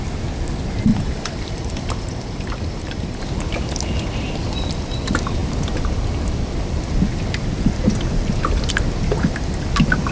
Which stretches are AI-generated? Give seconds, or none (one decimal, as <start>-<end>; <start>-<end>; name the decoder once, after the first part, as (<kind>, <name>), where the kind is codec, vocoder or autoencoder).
0.9-3.2 (vocoder, BigVGAN v2)